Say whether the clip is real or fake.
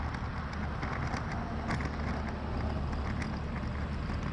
real